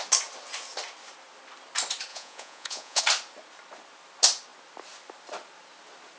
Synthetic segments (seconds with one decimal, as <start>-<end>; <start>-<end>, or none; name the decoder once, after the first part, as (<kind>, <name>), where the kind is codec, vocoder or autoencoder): 2.1-3.0 (vocoder, Vocos)